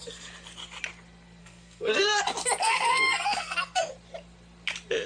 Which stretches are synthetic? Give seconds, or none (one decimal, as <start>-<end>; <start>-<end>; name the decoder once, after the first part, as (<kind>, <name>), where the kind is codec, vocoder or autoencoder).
1.4-2.2 (codec, SNAC); 2.6-3.9

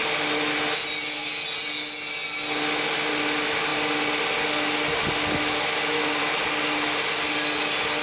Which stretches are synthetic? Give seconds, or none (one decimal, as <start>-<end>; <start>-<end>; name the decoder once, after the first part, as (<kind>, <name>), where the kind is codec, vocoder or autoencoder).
none

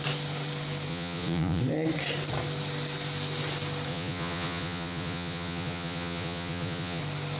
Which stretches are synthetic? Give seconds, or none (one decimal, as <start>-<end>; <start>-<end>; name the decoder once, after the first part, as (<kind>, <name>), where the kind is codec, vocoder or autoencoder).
0.9-1.6 (vocoder, Vocos); 3.9-7.0